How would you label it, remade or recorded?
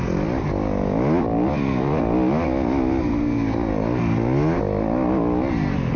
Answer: recorded